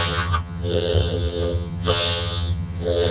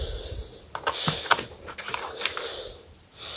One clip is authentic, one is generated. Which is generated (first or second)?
first